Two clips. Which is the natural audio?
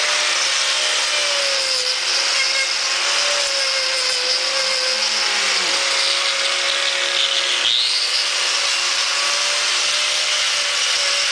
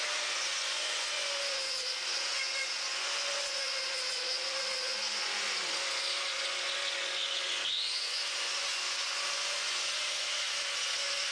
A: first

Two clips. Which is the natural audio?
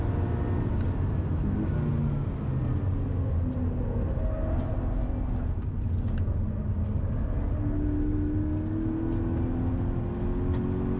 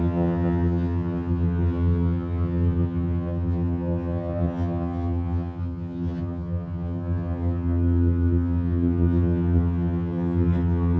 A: first